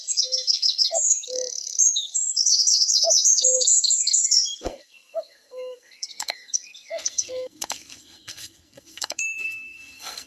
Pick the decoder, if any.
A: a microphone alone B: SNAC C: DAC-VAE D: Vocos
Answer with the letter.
B